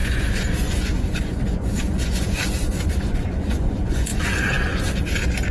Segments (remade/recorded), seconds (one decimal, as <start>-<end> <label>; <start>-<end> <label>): 0.0-5.5 remade